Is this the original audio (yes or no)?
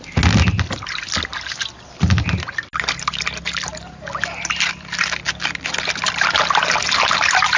yes